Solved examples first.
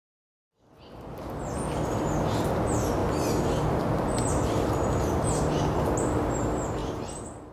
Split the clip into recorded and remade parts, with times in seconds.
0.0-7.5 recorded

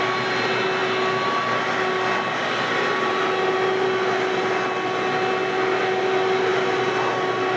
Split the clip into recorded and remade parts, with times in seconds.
0.0-7.6 recorded